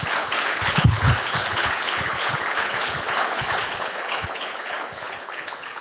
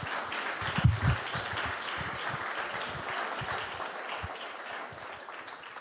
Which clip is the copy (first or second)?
first